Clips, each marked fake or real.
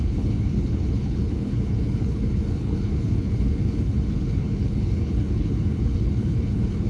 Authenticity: fake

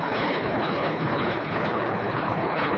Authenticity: fake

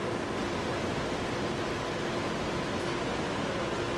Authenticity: real